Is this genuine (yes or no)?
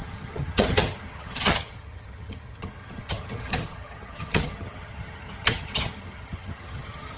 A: no